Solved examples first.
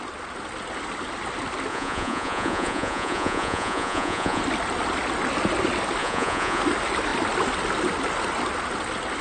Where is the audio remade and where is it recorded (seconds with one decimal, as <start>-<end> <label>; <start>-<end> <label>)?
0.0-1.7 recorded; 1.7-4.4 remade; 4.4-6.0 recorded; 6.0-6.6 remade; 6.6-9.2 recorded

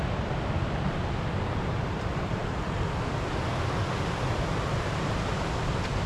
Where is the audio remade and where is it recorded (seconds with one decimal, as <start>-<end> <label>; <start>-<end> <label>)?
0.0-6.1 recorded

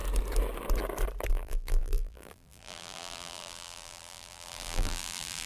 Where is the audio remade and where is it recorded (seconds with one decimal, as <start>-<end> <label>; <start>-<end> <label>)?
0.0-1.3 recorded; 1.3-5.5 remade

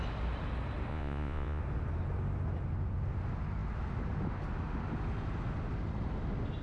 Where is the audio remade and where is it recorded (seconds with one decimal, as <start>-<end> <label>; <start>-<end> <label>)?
0.0-0.9 recorded; 0.9-1.6 remade; 1.6-6.6 recorded